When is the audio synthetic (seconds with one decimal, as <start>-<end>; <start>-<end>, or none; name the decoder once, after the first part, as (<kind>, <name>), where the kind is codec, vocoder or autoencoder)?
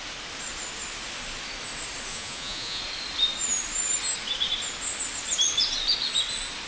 2.1-2.8 (vocoder, Vocos)